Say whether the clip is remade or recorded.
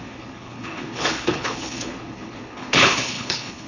remade